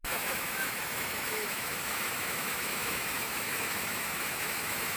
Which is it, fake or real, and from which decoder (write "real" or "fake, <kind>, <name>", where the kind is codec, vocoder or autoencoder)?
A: fake, autoencoder, DAC-VAE